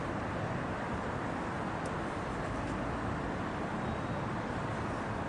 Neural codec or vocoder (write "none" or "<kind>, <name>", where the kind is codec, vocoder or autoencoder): none